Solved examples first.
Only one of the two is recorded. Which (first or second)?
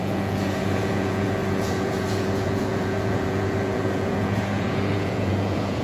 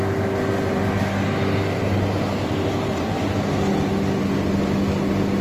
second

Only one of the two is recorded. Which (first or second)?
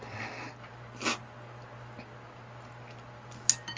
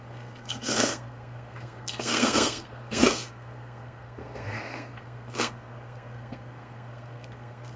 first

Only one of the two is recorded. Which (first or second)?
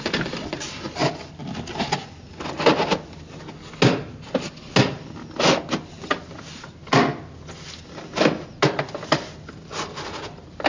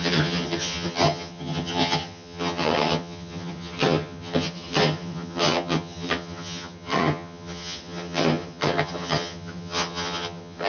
first